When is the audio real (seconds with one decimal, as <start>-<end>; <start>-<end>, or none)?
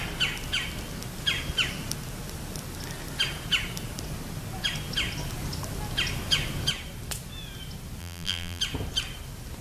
0.0-8.0; 8.6-9.6